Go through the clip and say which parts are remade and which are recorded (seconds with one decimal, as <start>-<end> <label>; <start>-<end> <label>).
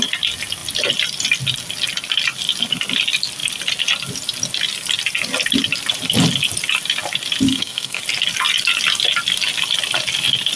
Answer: 0.0-7.5 recorded; 7.5-8.0 remade; 8.0-10.6 recorded